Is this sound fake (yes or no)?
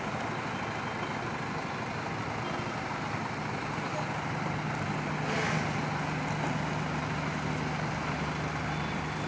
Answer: no